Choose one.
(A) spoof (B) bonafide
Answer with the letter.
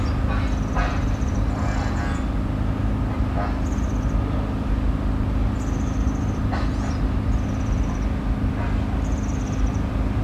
B